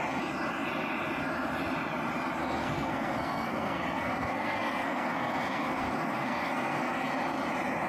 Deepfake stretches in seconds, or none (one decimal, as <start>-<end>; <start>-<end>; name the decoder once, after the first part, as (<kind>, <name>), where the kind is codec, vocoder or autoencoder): 2.4-7.1 (codec, SNAC)

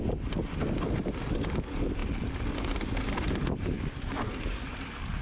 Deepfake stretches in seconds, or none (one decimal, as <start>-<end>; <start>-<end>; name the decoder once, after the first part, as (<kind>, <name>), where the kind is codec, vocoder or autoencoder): none

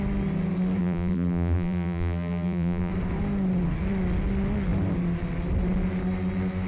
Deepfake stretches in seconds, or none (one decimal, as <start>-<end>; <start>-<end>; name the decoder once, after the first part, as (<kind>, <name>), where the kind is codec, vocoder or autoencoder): 0.8-2.9 (vocoder, BigVGAN v2)

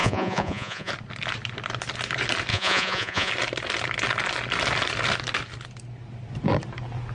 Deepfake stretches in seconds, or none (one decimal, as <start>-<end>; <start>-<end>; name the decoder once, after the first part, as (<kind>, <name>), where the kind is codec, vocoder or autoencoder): 0.0-0.9 (vocoder, Vocos); 2.5-3.3

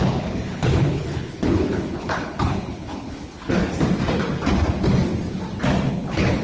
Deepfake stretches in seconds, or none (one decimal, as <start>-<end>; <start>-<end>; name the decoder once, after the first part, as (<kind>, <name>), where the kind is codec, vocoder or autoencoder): 0.0-3.6 (codec, HILCodec); 5.9-6.4